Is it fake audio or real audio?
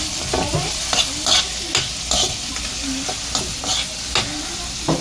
real